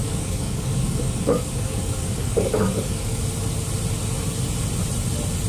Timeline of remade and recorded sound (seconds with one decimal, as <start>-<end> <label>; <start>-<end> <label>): 0.0-3.2 remade; 3.2-5.5 recorded